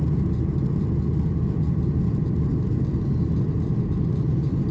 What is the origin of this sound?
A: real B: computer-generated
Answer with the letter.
A